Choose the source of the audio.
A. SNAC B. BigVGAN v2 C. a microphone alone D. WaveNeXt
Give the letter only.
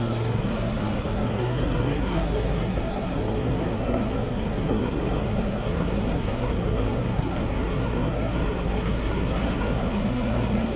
A